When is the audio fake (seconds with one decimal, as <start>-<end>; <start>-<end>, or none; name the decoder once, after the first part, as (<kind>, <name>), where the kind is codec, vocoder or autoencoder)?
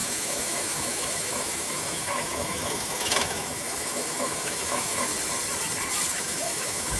0.0-5.1 (autoencoder, DAC-VAE); 6.1-7.0